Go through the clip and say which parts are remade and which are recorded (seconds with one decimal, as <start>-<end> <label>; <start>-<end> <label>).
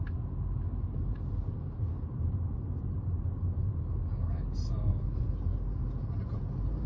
0.0-6.9 recorded